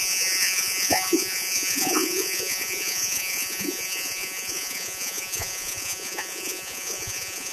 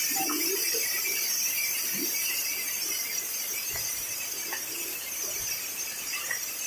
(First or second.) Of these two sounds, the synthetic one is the first